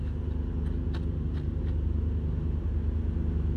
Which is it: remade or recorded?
recorded